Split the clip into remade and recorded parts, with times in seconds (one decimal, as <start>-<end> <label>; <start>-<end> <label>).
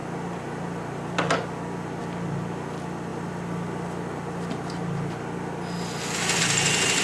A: 0.0-7.0 recorded